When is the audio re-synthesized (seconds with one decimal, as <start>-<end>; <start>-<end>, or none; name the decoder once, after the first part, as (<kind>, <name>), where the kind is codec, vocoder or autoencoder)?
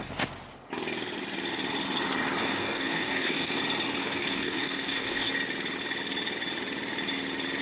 2.4-3.6 (codec, DAC); 4.0-5.3